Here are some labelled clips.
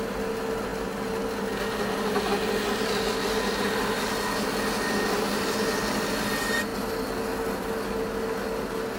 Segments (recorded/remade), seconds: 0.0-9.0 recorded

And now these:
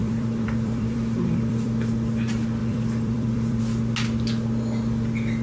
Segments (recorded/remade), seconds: 0.0-1.9 remade; 1.9-2.6 recorded; 2.6-3.6 remade; 3.6-5.4 recorded

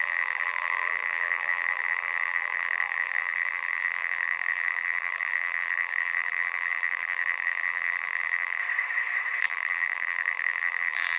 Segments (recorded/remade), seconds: 0.0-8.6 remade; 8.6-9.4 recorded; 9.4-11.2 remade

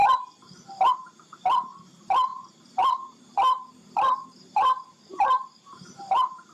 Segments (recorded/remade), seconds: 0.0-0.9 recorded; 0.9-6.5 remade

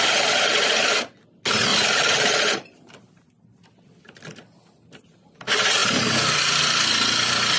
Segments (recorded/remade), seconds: 0.0-1.7 recorded; 1.7-3.4 remade; 3.4-7.6 recorded